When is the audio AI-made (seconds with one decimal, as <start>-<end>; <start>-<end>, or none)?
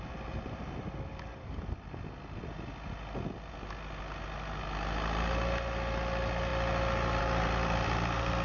none